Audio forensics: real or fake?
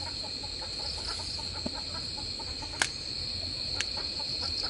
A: real